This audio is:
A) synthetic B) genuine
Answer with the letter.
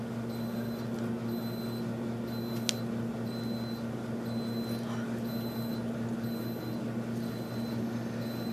B